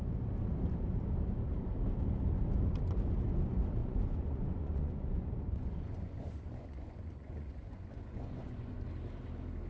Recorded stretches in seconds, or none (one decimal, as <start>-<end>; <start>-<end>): 0.0-3.8; 8.8-9.7